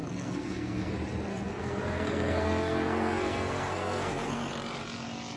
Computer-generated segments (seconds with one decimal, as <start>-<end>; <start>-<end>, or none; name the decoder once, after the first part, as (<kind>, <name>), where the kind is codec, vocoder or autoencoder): 0.0-0.9 (codec, SNAC); 1.3-4.5